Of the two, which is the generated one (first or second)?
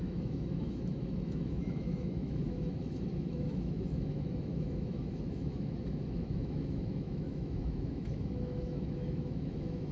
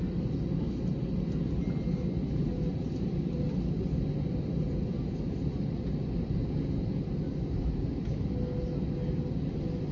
first